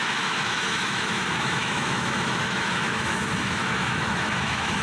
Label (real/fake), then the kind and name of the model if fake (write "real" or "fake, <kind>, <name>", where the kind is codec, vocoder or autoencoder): fake, autoencoder, DAC-VAE